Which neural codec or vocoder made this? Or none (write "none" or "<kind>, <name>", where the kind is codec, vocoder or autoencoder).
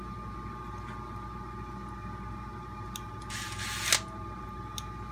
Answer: none